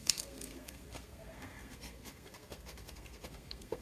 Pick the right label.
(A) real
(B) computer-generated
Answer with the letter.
B